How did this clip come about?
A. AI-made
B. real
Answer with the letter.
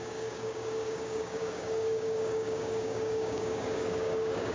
A